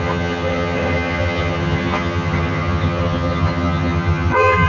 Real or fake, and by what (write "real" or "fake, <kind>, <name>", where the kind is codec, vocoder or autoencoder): fake, vocoder, HiFi-GAN